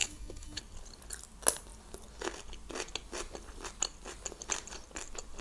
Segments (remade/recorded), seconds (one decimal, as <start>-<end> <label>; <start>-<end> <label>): 0.0-0.6 remade; 0.6-5.4 recorded